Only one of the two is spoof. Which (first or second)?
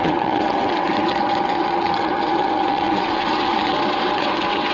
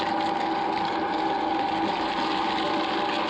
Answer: first